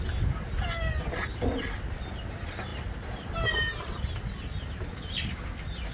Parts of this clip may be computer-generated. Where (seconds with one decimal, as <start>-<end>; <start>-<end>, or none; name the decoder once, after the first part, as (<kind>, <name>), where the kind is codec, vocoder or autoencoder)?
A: 1.3-2.1 (vocoder, BigVGAN v2); 2.7-5.1